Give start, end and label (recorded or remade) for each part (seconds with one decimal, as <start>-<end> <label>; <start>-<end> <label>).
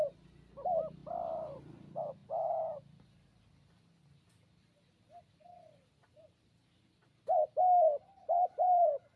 0.0-7.0 remade; 7.0-8.3 recorded; 8.3-9.2 remade